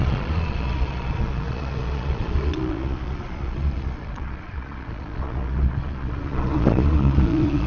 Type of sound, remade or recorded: remade